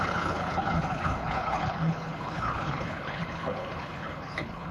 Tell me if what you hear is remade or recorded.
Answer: remade